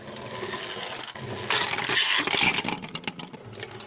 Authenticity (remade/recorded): recorded